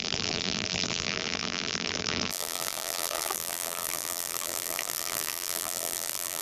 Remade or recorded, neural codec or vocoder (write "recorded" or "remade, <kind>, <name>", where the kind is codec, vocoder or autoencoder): remade, vocoder, BigVGAN v2